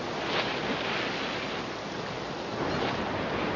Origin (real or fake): real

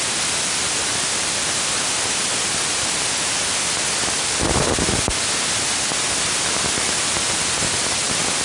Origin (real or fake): real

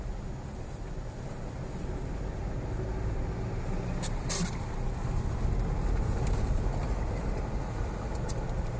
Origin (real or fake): real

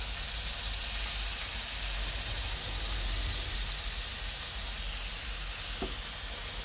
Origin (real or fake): real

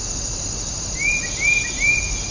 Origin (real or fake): real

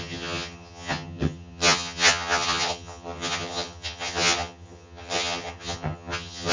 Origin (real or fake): fake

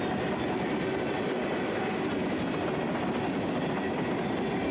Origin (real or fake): real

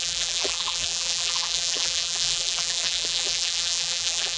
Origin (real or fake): fake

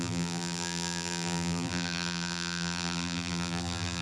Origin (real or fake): fake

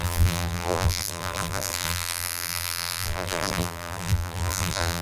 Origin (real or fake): fake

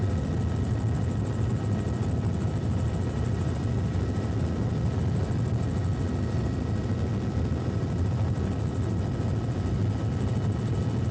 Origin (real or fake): real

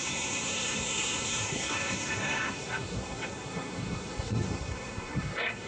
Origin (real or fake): fake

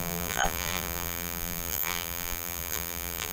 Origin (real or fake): fake